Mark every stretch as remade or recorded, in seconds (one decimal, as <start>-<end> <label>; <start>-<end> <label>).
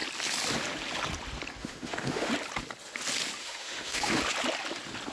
0.0-1.6 recorded; 1.6-2.3 remade; 2.3-3.4 recorded; 3.4-4.2 remade; 4.2-5.1 recorded